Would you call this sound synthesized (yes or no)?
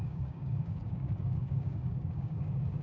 yes